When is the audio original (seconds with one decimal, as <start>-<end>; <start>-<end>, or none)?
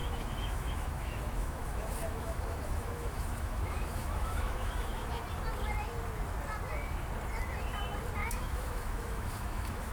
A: 5.2-8.2